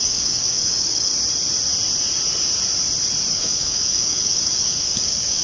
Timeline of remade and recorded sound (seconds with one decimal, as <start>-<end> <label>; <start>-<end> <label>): 0.0-1.1 remade; 1.1-3.3 recorded; 3.3-5.4 remade

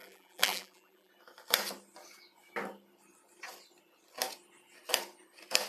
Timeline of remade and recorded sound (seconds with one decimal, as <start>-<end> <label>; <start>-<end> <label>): 0.0-1.1 remade; 1.1-5.7 recorded

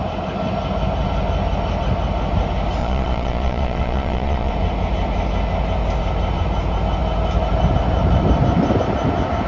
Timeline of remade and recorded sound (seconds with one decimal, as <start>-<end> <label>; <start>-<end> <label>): 0.0-2.8 recorded; 2.8-4.5 remade; 4.5-9.5 recorded

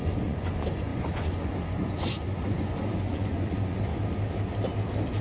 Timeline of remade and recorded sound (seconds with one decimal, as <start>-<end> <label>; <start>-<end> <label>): 0.0-3.9 remade; 3.9-5.2 recorded

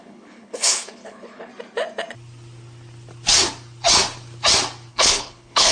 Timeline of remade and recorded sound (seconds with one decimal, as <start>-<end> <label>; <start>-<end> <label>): 0.0-1.5 remade; 1.5-4.9 recorded; 4.9-5.7 remade